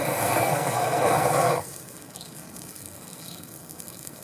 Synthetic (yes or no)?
yes